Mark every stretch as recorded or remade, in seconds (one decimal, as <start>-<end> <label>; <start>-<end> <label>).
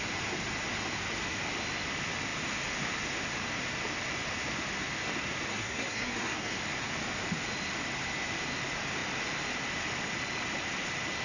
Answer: 0.0-5.5 recorded; 5.5-6.6 remade; 6.6-11.2 recorded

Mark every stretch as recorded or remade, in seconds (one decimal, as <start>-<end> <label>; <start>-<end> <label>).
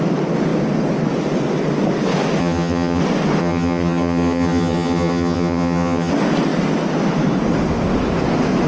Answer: 0.0-2.4 recorded; 2.4-3.0 remade; 3.0-3.4 recorded; 3.4-6.1 remade; 6.1-8.7 recorded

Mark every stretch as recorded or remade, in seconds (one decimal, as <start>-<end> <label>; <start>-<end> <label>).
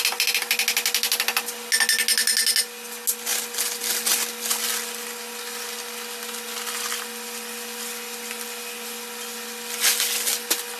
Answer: 0.0-10.8 recorded